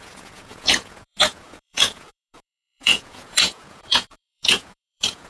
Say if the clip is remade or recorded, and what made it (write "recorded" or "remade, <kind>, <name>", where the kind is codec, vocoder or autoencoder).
remade, vocoder, Vocos